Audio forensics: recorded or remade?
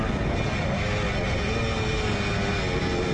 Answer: recorded